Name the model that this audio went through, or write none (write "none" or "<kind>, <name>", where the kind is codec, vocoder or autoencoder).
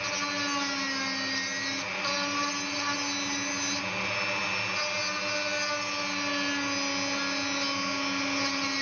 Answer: none